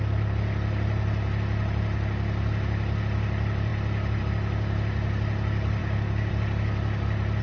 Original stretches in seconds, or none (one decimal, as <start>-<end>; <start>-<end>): 0.0-5.8; 6.3-7.4